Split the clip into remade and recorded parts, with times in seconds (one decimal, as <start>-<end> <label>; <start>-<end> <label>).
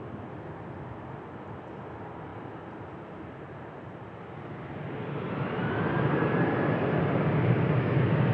0.0-8.3 recorded